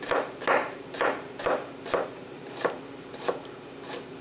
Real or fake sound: fake